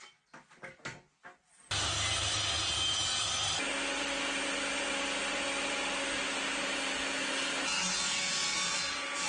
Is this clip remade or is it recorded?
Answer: recorded